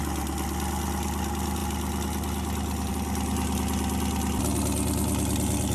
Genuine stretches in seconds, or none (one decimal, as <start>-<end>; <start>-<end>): 0.0-5.7